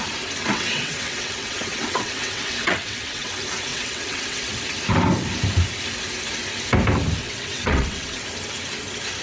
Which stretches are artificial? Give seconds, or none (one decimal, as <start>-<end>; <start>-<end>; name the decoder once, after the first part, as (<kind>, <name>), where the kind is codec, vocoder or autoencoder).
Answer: 0.4-3.3 (vocoder, WaveNeXt); 3.7-4.5; 7.2-8.2